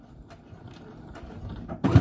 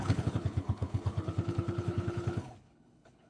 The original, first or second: first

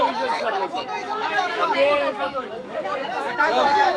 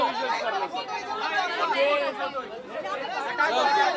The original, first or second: second